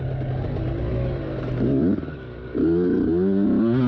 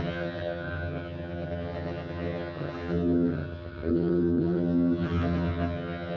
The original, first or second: first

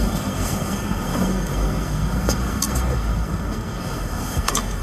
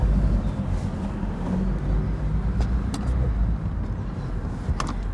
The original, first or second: second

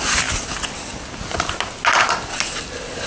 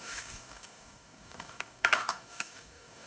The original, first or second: first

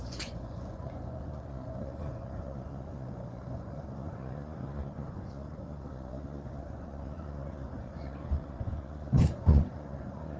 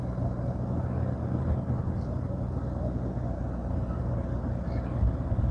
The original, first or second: second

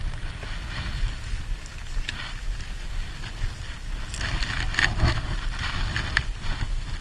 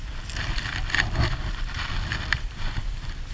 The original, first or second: first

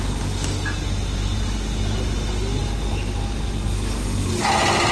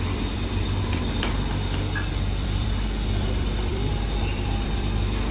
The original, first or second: first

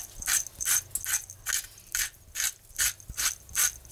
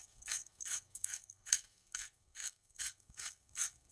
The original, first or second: first